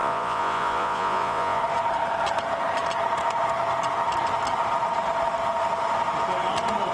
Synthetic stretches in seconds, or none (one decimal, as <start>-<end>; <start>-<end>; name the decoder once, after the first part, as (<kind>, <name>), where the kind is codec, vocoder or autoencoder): 0.0-1.6 (vocoder, Vocos)